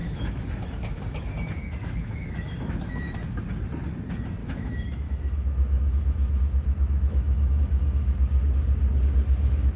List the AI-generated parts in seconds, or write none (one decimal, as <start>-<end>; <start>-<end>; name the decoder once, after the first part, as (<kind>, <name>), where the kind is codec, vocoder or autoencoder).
0.0-1.0 (autoencoder, DAC-VAE); 1.8-3.1; 4.4-7.6

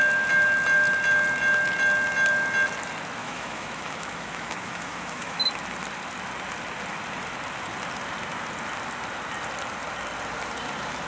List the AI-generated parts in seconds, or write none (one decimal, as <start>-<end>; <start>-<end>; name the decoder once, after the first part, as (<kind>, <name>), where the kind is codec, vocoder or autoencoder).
3.2-5.4 (autoencoder, DAC-VAE)

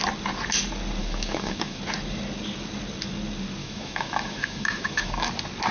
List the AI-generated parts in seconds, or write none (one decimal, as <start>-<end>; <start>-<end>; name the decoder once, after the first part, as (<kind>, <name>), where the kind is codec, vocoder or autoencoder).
1.0-1.8 (autoencoder, DAC-VAE); 3.6-5.3

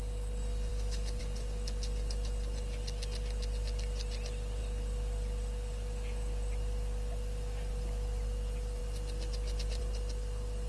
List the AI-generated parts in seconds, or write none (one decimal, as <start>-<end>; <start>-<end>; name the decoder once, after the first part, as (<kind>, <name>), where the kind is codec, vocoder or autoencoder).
0.7-1.2 (autoencoder, DAC-VAE)

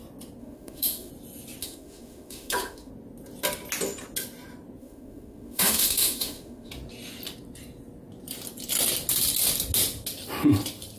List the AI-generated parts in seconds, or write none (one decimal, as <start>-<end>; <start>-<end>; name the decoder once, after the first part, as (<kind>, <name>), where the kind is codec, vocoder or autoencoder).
0.4-1.1 (autoencoder, DAC-VAE); 1.6-2.9; 4.8-6.7

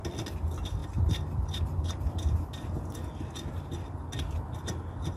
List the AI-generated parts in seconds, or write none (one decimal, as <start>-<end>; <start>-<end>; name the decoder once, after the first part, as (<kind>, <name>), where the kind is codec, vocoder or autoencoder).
none